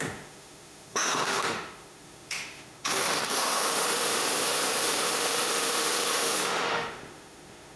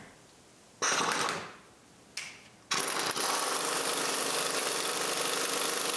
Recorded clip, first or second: second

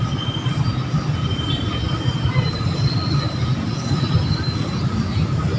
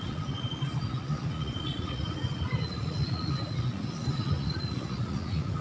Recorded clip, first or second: first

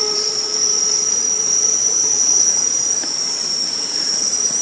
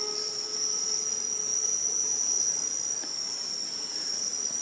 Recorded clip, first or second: second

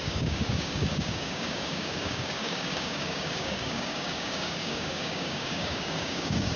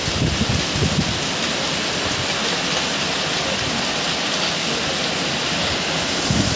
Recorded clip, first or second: second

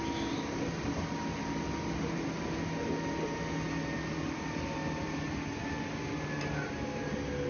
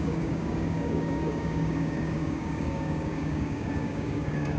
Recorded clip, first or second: first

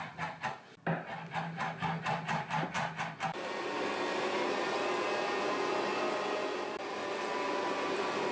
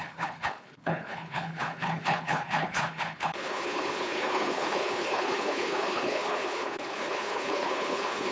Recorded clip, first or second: first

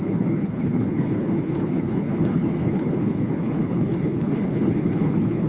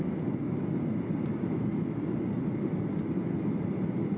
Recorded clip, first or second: second